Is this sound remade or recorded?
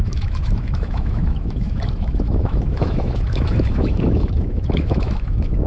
remade